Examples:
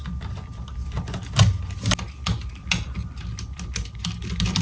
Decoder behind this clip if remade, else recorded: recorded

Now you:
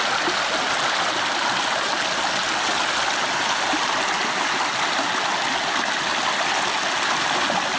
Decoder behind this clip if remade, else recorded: recorded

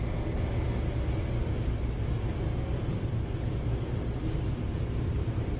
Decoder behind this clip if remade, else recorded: recorded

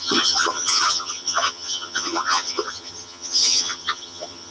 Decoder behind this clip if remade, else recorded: remade, vocoder, HiFi-GAN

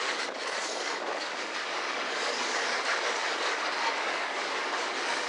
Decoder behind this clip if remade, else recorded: remade, codec, DAC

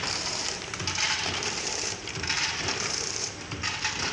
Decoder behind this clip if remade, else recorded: remade, vocoder, BigVGAN v2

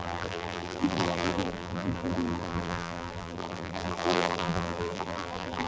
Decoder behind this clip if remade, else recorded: remade, vocoder, BigVGAN v2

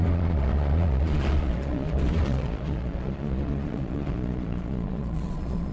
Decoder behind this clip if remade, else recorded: remade, vocoder, Vocos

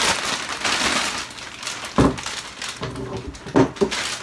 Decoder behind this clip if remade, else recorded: recorded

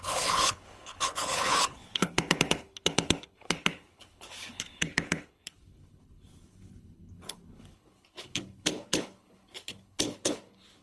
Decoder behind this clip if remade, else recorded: remade, codec, HILCodec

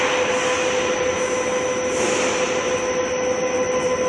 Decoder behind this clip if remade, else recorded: recorded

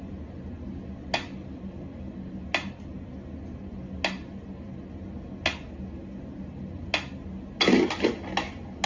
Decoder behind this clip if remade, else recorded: recorded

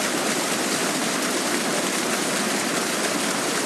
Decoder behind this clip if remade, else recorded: recorded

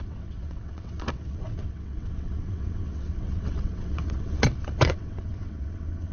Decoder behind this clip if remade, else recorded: remade, vocoder, WaveNeXt